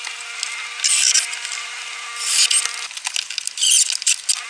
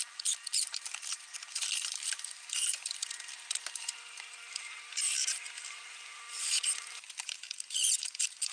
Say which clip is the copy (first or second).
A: second